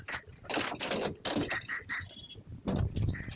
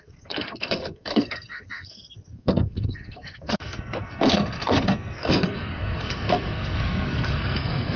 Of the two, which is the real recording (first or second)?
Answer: first